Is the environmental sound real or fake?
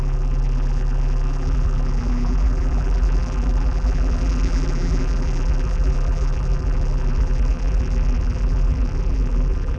fake